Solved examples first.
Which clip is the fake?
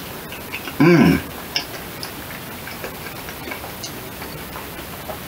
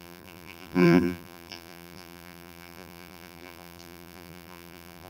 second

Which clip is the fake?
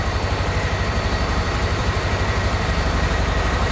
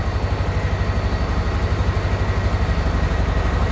first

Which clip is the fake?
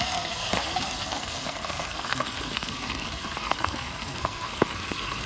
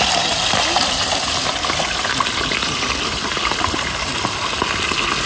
first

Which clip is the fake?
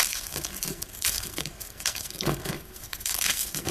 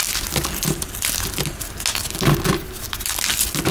first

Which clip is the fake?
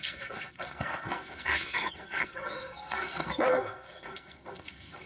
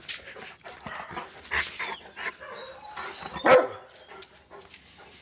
first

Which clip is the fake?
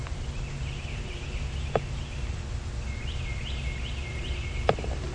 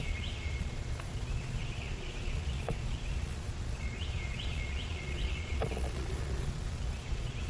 second